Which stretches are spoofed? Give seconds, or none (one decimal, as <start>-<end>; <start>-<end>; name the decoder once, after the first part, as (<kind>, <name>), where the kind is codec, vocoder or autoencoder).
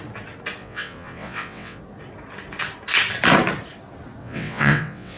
0.6-1.8 (vocoder, WaveNeXt); 4.2-5.2